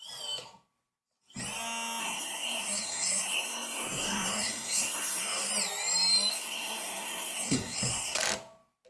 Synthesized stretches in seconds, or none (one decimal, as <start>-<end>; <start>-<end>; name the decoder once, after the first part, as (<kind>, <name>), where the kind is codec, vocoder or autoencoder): 2.0-5.5 (codec, SNAC); 6.3-8.2